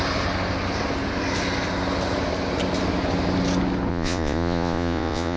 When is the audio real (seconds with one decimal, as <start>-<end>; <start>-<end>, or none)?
0.0-3.9